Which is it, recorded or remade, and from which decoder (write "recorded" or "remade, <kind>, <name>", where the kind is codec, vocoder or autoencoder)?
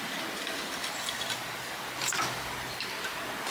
recorded